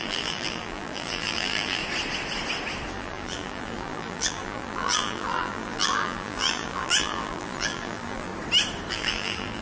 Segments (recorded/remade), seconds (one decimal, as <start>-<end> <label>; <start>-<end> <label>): 0.0-1.8 remade; 1.8-2.9 recorded; 2.9-8.3 remade; 8.3-8.9 recorded; 8.9-9.6 remade